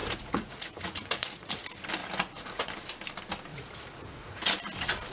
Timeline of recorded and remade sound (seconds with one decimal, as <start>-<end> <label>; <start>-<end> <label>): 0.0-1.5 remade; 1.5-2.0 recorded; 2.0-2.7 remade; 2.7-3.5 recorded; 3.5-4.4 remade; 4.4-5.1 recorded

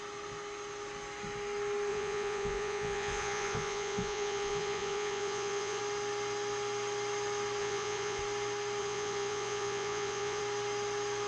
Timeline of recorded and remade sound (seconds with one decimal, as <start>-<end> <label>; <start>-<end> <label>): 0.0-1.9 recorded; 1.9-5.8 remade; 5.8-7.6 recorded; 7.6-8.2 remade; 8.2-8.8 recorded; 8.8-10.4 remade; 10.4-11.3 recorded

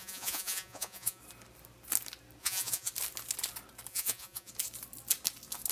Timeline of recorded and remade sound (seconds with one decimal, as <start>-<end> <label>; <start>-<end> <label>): 0.0-1.2 remade; 1.2-2.4 recorded; 2.4-2.9 remade; 2.9-3.9 recorded; 3.9-4.5 remade; 4.5-5.7 recorded

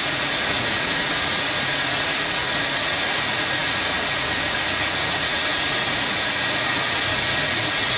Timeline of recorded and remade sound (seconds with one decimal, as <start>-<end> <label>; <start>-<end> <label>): 0.0-8.0 remade

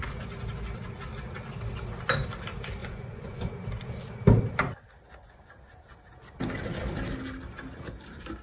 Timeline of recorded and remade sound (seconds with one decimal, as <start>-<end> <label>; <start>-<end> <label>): 0.0-2.8 recorded; 2.8-3.5 remade; 3.5-8.4 recorded

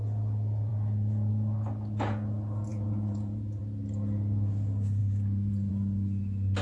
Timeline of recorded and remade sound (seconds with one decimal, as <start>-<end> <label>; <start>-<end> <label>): 0.0-0.7 recorded; 0.7-1.3 remade; 1.3-2.7 recorded; 2.7-3.6 remade; 3.6-5.0 recorded; 5.0-5.7 remade; 5.7-6.6 recorded